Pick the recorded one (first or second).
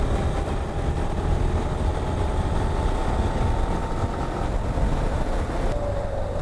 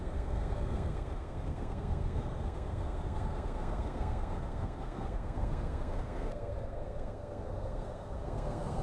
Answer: first